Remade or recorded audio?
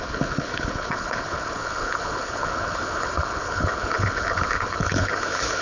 remade